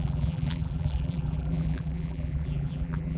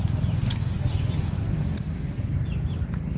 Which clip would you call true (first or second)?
second